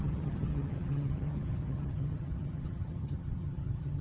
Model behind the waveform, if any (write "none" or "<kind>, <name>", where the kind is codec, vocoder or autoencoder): vocoder, HiFi-GAN